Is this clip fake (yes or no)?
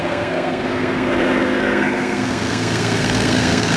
yes